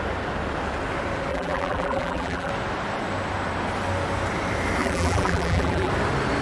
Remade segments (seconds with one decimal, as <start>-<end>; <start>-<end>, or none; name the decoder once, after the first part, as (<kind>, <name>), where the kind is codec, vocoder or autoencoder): 1.3-2.5 (vocoder, BigVGAN v2); 4.8-5.9